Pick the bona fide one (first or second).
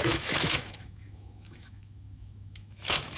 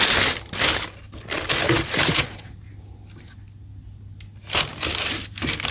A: second